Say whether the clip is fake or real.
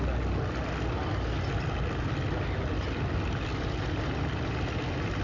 real